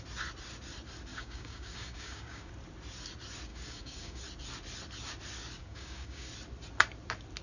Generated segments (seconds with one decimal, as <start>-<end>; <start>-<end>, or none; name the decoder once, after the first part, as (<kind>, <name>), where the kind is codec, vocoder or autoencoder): 1.1-2.5 (codec, DAC); 3.5-4.2; 5.6-6.3